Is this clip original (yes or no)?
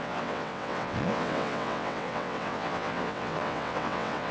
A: no